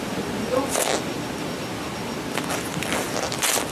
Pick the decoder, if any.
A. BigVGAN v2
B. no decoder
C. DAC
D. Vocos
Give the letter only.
B